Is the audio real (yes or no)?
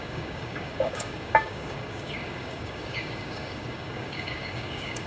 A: no